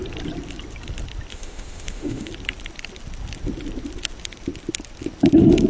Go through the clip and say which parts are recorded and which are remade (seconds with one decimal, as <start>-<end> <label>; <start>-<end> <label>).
0.0-1.3 recorded; 1.3-2.3 remade; 2.3-5.7 recorded

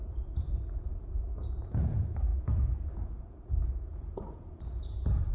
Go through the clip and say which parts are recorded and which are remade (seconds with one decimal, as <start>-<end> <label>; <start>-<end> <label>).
0.0-5.3 remade

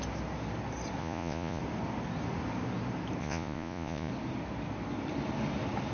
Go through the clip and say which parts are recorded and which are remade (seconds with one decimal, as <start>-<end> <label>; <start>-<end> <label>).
0.0-1.0 recorded; 1.0-1.6 remade; 1.6-3.2 recorded; 3.2-4.1 remade; 4.1-5.9 recorded

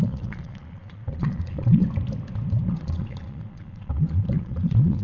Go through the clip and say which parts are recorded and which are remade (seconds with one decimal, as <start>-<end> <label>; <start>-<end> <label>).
0.0-1.8 remade; 1.8-2.7 recorded; 2.7-5.0 remade

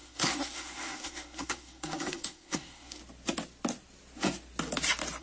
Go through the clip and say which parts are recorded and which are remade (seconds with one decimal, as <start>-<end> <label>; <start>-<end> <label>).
0.0-3.0 remade; 3.0-5.2 recorded

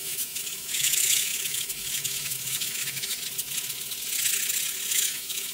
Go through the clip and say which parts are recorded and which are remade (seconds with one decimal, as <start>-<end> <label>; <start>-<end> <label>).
0.0-3.1 remade; 3.1-4.9 recorded; 4.9-5.5 remade

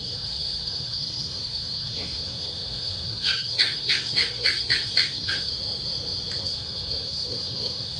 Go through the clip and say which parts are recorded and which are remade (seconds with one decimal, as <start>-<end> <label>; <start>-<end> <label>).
0.0-5.5 remade; 5.5-6.4 recorded; 6.4-8.0 remade

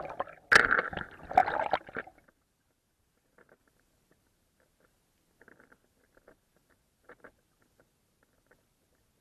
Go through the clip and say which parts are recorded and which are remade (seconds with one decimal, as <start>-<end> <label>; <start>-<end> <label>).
0.0-9.2 recorded